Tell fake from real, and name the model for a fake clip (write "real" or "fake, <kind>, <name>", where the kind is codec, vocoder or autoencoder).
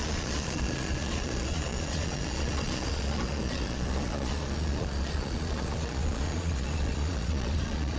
fake, vocoder, Vocos